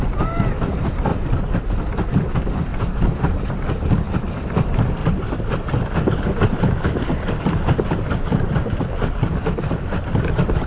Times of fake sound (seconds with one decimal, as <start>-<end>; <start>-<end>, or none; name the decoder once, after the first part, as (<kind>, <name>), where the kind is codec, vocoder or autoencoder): 0.0-1.1 (vocoder, BigVGAN v2); 2.1-2.7; 4.2-5.0; 7.4-10.7